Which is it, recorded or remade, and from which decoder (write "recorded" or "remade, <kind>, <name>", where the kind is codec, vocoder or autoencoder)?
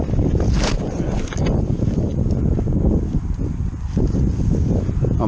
recorded